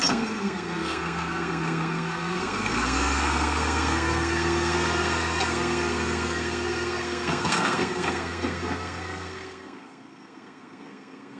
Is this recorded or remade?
remade